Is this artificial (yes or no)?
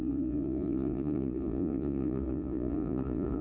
yes